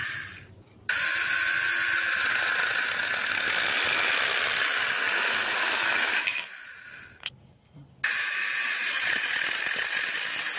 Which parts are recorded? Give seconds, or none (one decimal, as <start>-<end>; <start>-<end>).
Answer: 2.1-10.6